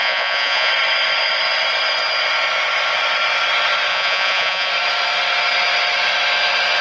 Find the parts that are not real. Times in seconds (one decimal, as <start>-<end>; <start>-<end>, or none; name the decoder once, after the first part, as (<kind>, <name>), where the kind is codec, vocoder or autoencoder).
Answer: 0.0-0.7 (vocoder, Vocos); 3.9-4.7